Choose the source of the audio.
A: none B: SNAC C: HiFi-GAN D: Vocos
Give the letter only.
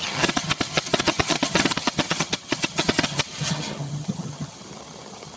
C